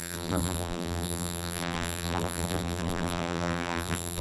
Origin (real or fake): fake